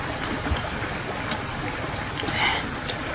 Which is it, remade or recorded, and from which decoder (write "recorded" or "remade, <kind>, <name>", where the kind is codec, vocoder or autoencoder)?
recorded